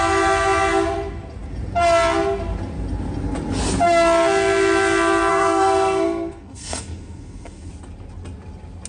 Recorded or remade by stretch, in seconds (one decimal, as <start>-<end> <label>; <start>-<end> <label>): 0.0-5.3 recorded; 5.3-7.7 remade; 7.7-8.9 recorded